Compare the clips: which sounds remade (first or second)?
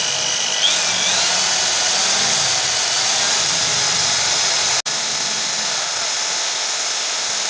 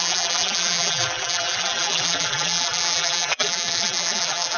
second